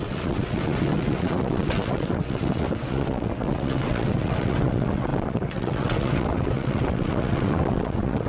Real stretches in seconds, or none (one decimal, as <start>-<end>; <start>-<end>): none